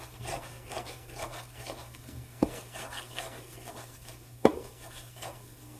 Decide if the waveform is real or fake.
fake